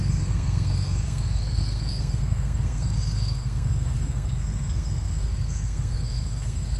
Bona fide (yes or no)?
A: no